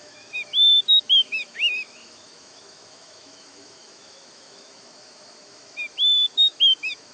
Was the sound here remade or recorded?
remade